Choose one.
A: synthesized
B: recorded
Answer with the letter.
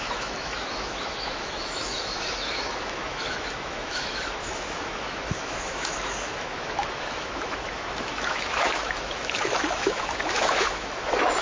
A